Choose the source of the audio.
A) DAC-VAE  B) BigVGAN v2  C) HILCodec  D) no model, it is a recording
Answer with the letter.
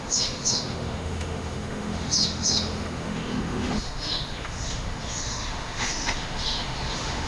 A